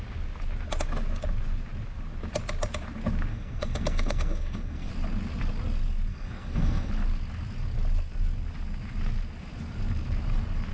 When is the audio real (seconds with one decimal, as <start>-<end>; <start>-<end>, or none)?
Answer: 0.0-3.3; 4.9-6.1; 6.9-10.7